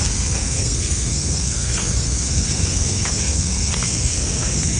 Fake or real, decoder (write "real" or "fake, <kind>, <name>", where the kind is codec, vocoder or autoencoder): fake, codec, SNAC